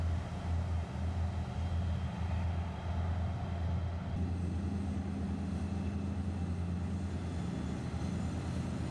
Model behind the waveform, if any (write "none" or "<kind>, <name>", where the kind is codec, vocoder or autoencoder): none